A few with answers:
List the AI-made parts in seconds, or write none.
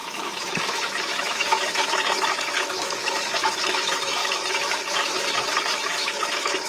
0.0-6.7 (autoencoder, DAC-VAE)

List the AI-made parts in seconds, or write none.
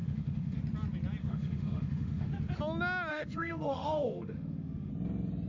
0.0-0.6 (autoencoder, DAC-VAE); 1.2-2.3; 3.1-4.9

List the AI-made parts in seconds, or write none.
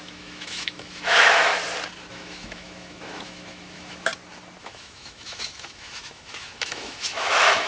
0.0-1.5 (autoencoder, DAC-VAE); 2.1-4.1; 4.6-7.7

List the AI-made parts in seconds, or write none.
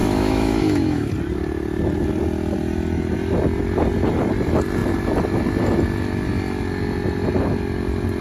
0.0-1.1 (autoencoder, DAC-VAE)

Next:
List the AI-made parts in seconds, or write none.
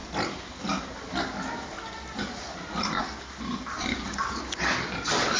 none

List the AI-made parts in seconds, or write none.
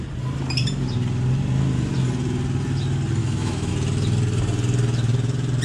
3.2-3.7 (autoencoder, DAC-VAE)